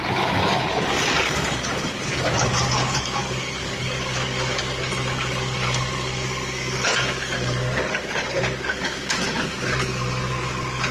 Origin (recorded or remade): remade